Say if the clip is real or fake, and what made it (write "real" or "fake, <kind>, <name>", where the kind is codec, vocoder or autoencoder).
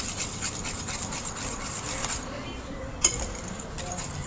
fake, vocoder, BigVGAN v2